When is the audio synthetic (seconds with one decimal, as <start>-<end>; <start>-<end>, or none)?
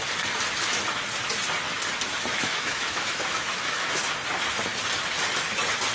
2.3-4.0